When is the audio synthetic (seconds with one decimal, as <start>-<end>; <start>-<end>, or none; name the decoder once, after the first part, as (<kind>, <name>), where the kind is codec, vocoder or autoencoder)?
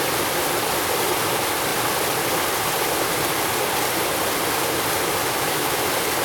5.2-5.8 (autoencoder, DAC-VAE)